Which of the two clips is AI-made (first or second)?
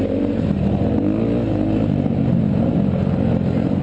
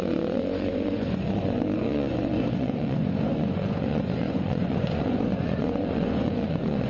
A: second